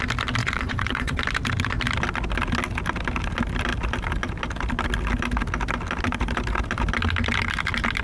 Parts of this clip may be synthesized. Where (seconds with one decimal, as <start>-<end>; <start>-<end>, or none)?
0.4-1.2